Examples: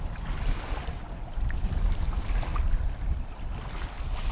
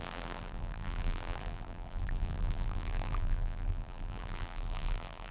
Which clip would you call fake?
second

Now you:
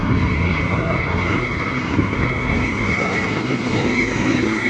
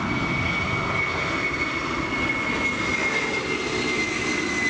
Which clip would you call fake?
first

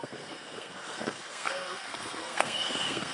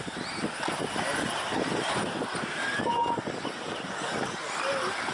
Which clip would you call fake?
first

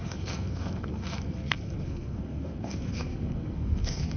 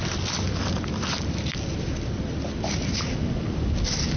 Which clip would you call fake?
first